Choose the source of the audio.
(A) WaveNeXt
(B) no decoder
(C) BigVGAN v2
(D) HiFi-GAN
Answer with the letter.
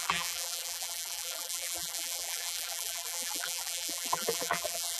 C